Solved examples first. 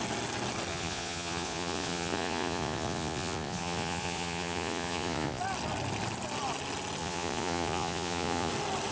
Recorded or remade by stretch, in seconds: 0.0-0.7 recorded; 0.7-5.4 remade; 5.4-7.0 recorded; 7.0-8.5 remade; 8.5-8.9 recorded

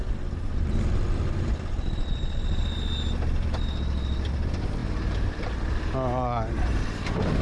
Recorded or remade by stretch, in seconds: 0.0-7.4 recorded

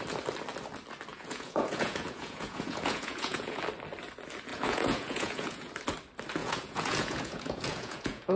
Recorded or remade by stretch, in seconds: 0.0-1.1 recorded; 1.1-3.6 remade; 3.6-4.5 recorded; 4.5-5.7 remade; 5.7-6.4 recorded; 6.4-8.4 remade